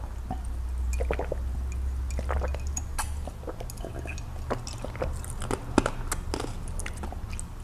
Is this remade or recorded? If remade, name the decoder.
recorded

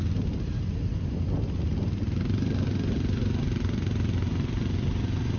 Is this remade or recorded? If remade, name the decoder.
recorded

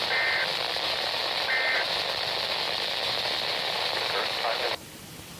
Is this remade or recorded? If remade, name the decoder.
recorded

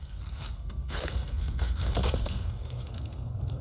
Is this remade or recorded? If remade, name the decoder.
remade, codec, SNAC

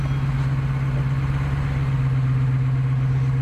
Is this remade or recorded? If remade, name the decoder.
recorded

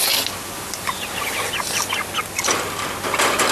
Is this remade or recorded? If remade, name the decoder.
recorded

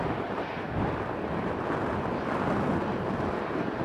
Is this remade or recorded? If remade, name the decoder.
recorded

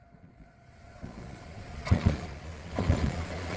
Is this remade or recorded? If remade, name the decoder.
remade, vocoder, Vocos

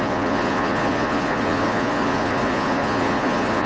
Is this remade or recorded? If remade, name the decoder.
remade, vocoder, Vocos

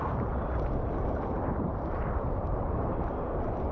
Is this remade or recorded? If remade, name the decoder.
remade, vocoder, BigVGAN v2